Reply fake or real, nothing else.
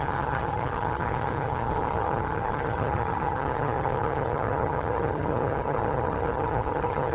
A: fake